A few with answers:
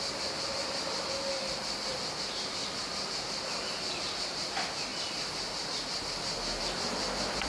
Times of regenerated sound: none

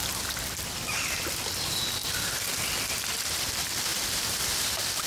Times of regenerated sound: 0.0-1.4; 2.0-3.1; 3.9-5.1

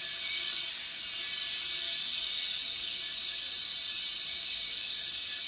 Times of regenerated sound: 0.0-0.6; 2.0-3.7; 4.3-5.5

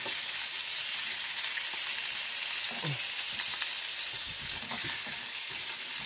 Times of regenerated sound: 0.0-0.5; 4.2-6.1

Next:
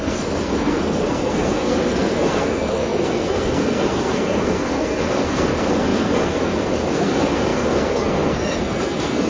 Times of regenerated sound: 0.0-9.3

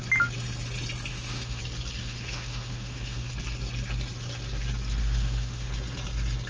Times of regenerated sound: 1.1-1.6; 2.0-3.3; 5.0-5.7

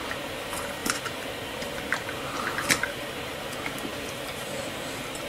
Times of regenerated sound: 0.8-2.9

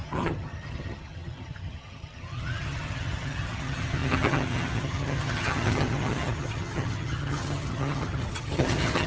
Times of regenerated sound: 0.0-9.1